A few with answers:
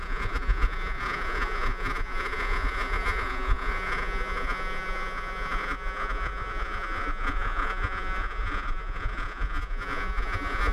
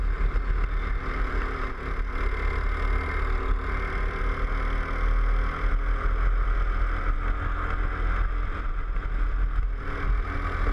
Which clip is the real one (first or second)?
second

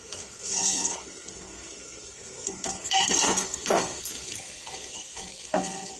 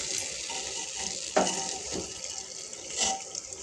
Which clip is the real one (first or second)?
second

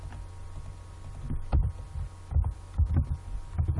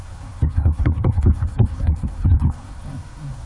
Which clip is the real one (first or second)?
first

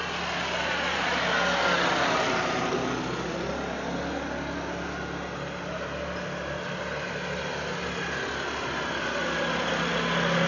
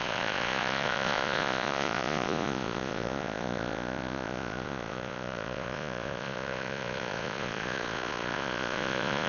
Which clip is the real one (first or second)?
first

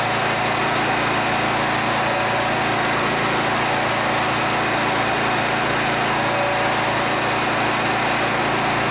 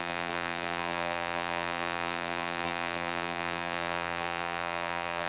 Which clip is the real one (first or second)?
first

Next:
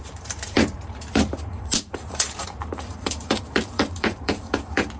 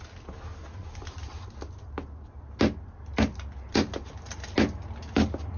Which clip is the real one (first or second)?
second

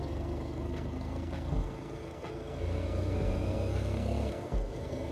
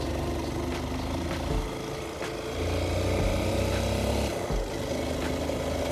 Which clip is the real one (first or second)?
second